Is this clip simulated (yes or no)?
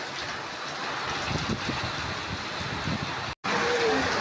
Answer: no